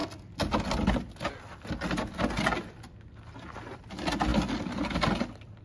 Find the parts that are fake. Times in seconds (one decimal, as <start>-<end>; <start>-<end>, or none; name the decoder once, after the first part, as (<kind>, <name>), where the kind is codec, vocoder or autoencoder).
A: none

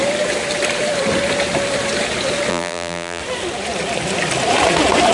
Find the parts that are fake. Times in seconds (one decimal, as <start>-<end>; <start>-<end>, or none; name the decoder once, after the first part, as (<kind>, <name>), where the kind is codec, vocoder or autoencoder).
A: 2.5-3.2 (vocoder, BigVGAN v2)

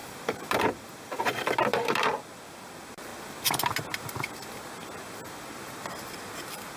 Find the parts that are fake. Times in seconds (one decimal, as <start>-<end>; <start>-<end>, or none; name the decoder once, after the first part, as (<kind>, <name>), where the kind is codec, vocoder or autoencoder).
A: 0.0-2.1 (vocoder, BigVGAN v2)